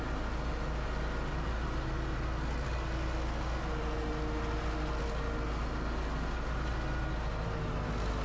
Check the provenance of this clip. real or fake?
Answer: real